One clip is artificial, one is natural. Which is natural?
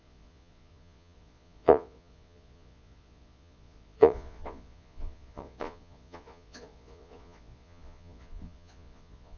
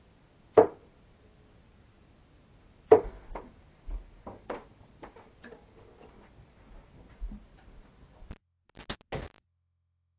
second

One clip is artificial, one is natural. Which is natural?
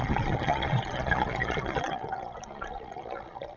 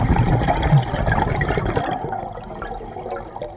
second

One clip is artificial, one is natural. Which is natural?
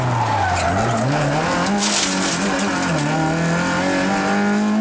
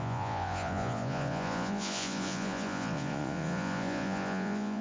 first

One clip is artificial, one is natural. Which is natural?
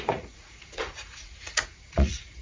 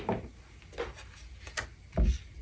second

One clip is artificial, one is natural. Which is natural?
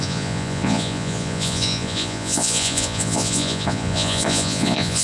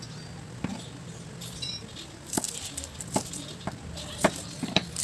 second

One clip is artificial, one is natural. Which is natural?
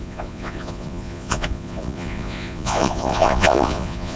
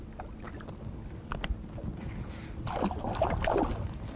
second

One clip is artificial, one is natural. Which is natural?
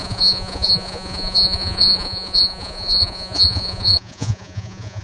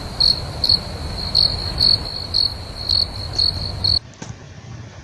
second